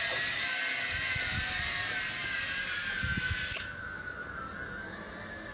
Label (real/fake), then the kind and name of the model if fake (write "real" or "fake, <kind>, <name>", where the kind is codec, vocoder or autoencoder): real